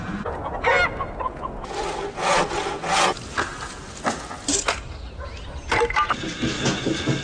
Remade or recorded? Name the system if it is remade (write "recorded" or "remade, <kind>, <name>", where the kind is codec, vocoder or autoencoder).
recorded